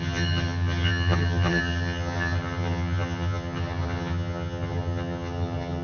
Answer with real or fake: fake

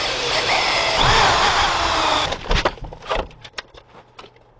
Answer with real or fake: fake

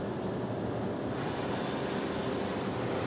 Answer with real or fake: real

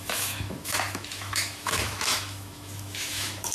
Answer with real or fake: fake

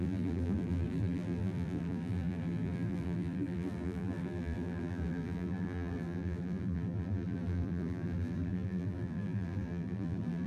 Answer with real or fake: fake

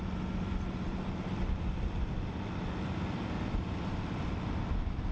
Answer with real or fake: fake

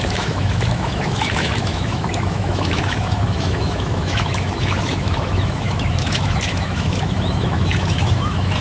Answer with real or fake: fake